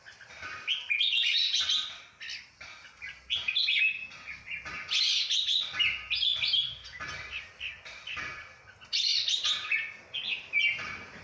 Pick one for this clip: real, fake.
real